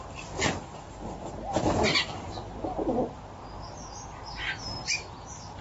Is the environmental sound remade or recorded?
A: recorded